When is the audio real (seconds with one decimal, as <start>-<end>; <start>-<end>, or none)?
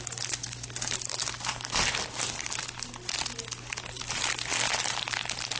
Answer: 0.0-5.6